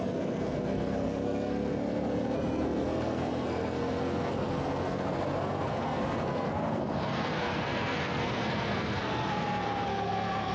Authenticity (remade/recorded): remade